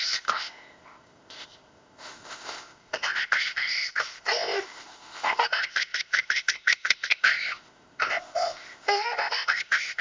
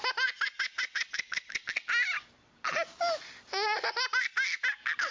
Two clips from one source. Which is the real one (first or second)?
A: second